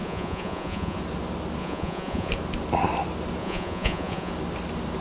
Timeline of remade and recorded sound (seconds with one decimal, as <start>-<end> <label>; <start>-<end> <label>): 0.0-1.0 remade; 1.0-1.6 recorded; 1.6-2.3 remade; 2.3-3.4 recorded; 3.4-4.3 remade; 4.3-5.0 recorded